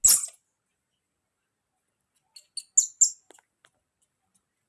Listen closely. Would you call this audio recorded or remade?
recorded